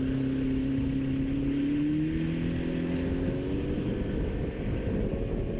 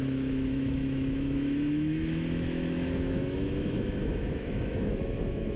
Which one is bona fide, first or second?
first